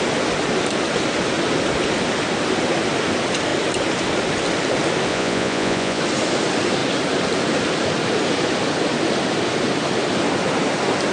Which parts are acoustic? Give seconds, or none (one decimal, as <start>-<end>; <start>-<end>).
0.0-5.1; 6.0-11.1